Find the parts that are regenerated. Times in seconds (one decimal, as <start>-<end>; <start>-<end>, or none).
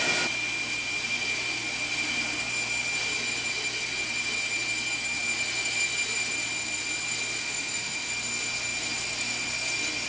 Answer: 7.4-8.1